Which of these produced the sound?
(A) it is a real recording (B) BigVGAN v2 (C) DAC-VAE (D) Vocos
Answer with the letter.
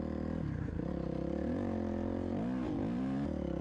A